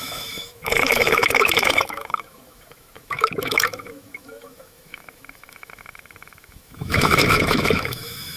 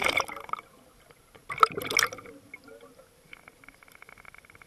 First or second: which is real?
second